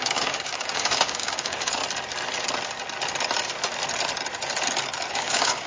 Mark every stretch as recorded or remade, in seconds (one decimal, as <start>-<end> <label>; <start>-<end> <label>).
0.0-1.8 remade; 1.8-5.1 recorded; 5.1-5.7 remade